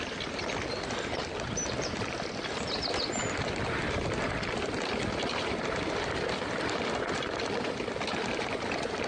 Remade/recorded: recorded